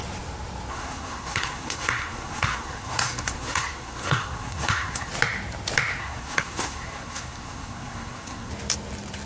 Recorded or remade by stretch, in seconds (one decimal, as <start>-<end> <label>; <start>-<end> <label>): 0.0-0.7 recorded; 0.7-5.1 remade; 5.1-6.0 recorded; 6.0-8.5 remade; 8.5-9.2 recorded